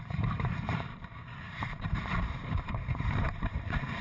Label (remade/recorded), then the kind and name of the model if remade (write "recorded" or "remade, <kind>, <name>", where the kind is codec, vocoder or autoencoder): remade, vocoder, BigVGAN v2